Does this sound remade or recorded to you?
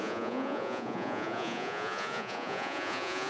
remade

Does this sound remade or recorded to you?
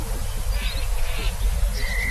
recorded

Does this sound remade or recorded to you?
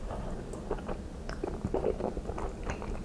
recorded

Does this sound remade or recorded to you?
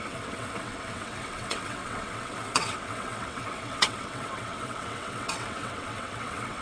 remade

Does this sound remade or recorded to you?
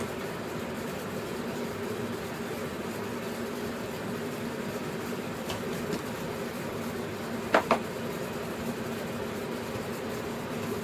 recorded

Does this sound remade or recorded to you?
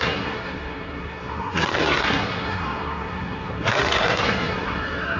remade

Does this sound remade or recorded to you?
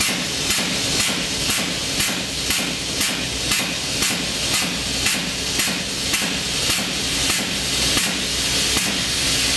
recorded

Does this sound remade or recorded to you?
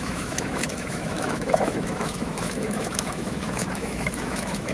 remade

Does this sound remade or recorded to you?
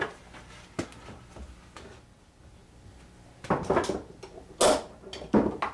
recorded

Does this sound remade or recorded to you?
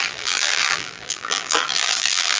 remade